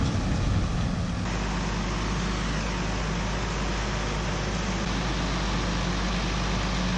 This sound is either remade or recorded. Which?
recorded